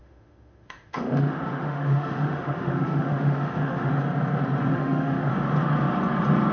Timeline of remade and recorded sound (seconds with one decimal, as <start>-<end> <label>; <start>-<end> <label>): 0.0-3.9 remade; 3.9-4.7 recorded; 4.7-5.3 remade; 5.3-6.5 recorded